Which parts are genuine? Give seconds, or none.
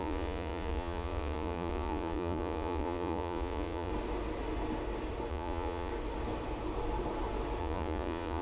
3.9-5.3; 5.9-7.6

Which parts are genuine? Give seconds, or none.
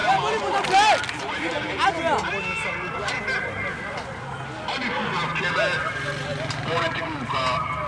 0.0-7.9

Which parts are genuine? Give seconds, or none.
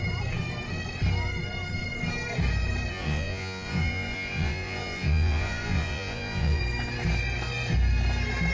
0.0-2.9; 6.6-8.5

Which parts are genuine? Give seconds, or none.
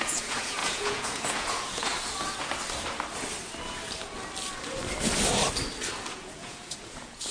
1.9-6.1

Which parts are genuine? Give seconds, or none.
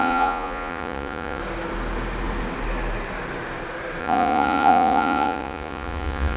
1.4-4.0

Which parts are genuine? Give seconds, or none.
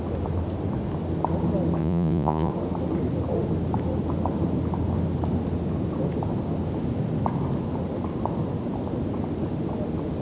0.0-1.8; 2.5-10.2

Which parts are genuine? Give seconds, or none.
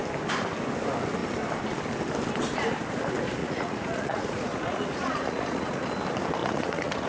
0.0-3.4; 5.9-6.4